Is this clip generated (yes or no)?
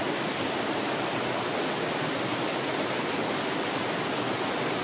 no